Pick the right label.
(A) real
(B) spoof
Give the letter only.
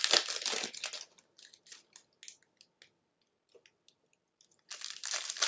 A